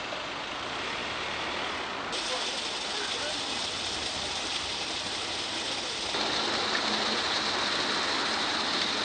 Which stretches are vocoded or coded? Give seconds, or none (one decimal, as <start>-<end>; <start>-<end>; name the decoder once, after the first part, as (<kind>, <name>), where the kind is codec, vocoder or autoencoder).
none